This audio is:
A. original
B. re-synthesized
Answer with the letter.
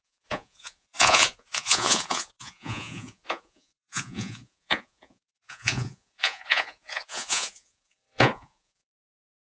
B